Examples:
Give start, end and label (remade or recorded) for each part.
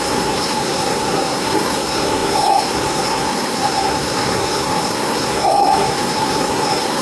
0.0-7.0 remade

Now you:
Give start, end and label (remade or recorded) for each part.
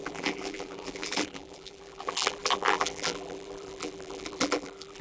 0.0-5.0 remade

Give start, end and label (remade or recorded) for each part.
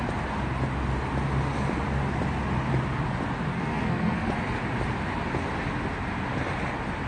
0.0-3.5 recorded; 3.5-4.3 remade; 4.3-7.1 recorded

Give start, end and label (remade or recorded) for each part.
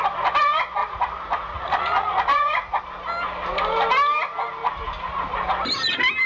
0.0-0.8 recorded; 0.8-2.8 remade; 2.8-6.3 recorded